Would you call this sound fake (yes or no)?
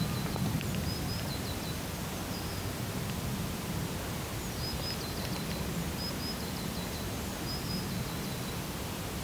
no